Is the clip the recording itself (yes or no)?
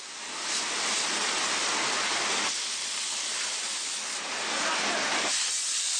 no